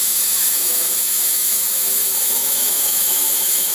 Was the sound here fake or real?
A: fake